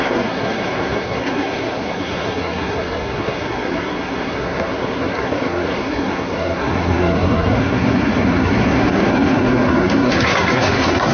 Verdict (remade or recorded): remade